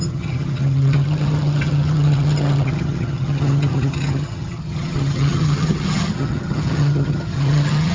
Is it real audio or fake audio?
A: fake